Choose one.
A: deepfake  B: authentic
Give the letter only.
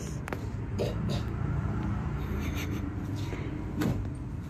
A